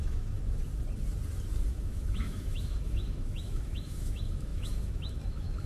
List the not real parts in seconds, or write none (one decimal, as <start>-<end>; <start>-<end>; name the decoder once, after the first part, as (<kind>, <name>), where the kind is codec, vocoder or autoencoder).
0.0-0.6 (autoencoder, DAC-VAE); 1.7-5.7